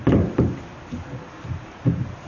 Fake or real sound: real